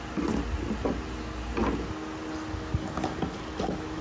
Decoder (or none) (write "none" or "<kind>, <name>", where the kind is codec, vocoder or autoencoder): none